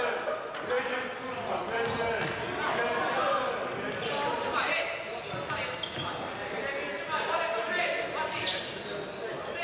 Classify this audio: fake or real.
real